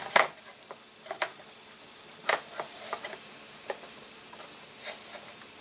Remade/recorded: remade